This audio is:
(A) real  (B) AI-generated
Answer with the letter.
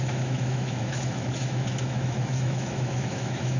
B